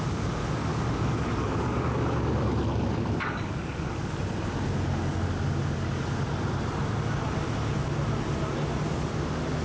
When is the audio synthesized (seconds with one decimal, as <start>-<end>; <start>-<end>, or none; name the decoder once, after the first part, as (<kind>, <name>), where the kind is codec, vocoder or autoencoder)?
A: 0.7-4.2 (codec, DAC)